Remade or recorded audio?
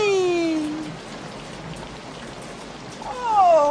recorded